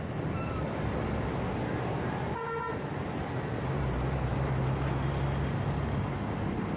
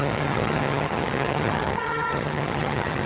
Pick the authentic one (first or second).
first